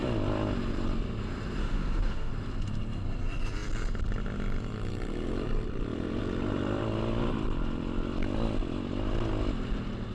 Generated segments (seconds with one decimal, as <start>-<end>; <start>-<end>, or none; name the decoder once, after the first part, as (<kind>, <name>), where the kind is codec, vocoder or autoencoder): 1.6-2.3 (autoencoder, DAC-VAE)